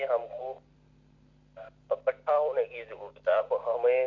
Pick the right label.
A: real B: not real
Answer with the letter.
A